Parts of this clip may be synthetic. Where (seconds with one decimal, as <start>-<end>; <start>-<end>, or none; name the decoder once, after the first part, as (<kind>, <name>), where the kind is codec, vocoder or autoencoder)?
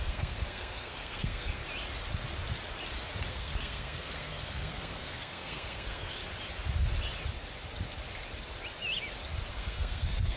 0.0-1.6 (codec, SNAC); 3.3-6.2; 9.5-10.4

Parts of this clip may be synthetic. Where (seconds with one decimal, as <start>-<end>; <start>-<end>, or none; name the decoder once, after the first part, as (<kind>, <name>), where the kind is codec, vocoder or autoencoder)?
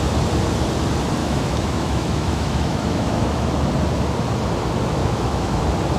1.2-3.5 (autoencoder, DAC-VAE); 5.0-5.6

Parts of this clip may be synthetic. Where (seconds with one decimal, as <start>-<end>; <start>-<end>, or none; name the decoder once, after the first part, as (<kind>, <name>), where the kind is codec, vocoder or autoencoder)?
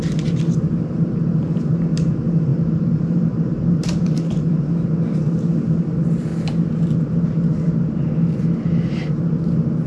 2.5-4.7 (vocoder, BigVGAN v2)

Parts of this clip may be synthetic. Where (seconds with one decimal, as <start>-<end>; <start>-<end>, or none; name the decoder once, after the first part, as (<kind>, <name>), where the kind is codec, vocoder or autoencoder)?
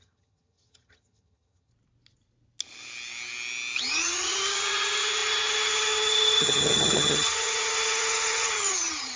0.0-1.7 (vocoder, HiFi-GAN); 3.8-9.2